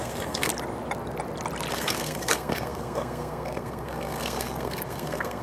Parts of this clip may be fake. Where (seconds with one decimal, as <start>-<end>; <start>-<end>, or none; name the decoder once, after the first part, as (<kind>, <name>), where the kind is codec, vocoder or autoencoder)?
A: 0.0-0.5 (codec, SNAC); 1.7-5.4